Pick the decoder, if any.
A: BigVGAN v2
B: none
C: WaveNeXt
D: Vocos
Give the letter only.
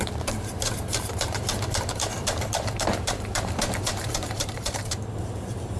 A